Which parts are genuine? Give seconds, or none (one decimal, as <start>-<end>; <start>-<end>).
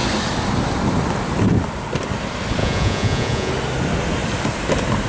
0.0-2.6; 3.5-5.1